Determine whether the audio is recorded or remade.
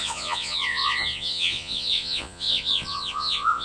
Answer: remade